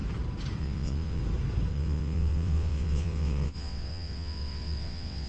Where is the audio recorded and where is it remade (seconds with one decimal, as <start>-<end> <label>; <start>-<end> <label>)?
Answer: 0.0-0.6 recorded; 0.6-1.2 remade; 1.2-1.7 recorded; 1.7-5.3 remade